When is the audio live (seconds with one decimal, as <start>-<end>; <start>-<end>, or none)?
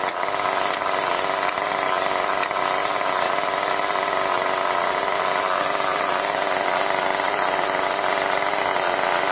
0.0-9.3